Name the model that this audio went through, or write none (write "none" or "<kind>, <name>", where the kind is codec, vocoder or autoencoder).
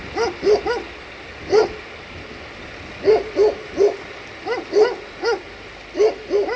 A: none